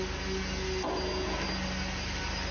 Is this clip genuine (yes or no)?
yes